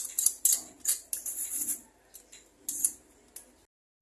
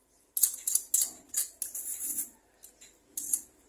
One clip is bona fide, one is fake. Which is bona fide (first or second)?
first